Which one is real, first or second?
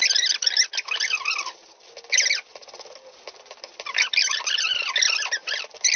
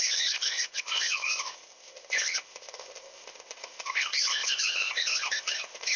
first